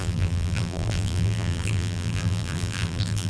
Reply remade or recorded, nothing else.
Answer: remade